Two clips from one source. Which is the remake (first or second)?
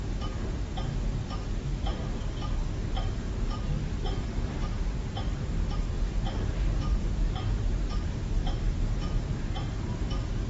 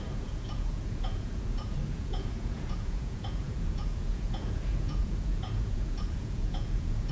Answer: second